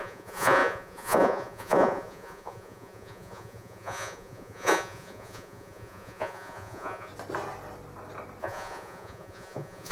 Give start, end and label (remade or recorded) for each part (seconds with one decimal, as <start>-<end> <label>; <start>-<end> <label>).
0.0-7.1 remade; 7.1-8.4 recorded; 8.4-9.9 remade